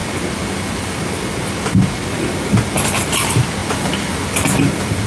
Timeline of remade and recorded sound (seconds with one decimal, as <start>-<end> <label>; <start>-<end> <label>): 0.0-5.1 recorded